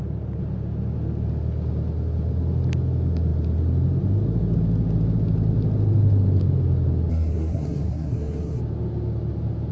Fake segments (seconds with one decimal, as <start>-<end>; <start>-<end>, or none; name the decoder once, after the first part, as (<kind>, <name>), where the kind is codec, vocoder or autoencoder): 7.1-8.6 (codec, SNAC)

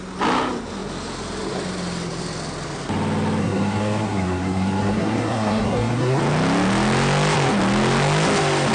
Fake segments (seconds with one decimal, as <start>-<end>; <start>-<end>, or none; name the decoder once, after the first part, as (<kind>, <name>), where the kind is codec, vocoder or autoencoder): 3.4-6.2 (codec, SNAC)

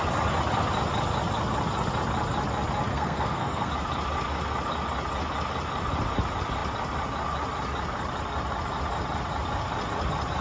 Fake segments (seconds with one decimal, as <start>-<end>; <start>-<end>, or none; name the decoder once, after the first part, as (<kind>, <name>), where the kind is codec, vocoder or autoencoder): 2.9-3.7 (codec, SNAC)

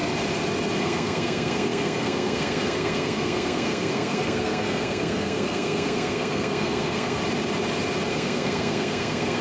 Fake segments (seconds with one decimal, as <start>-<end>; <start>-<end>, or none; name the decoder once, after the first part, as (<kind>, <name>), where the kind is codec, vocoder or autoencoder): 0.8-7.2 (codec, SNAC); 8.1-9.4